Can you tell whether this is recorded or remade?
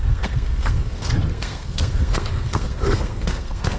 remade